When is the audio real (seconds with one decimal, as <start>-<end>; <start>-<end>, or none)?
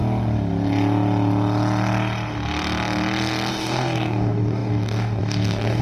0.0-3.5